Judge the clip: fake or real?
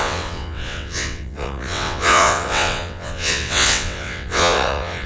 fake